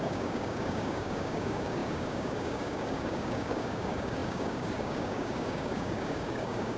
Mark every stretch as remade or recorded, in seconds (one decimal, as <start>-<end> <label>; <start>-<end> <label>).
0.0-6.8 remade